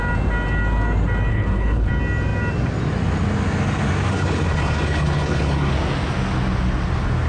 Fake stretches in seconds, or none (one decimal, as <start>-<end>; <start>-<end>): 1.3-1.9; 4.1-5.7